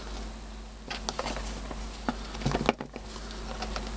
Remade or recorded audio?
recorded